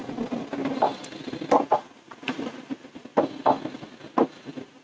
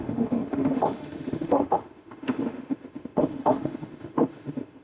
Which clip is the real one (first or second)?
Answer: first